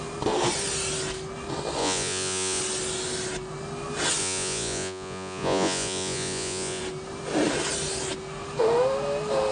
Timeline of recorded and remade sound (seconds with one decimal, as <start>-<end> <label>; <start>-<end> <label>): 0.0-1.8 recorded; 1.8-2.6 remade; 2.6-4.2 recorded; 4.2-6.8 remade; 6.8-9.5 recorded